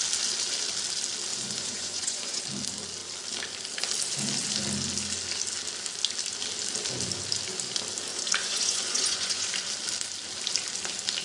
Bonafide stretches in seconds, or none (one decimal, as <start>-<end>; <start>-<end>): 0.0-1.3; 2.4-8.1; 9.5-11.2